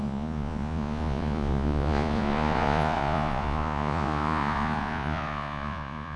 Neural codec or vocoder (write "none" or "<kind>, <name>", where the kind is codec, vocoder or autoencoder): vocoder, Vocos